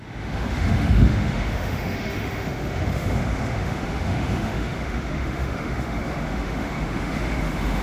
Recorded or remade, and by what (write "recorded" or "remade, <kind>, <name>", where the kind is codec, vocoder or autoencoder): remade, autoencoder, DAC-VAE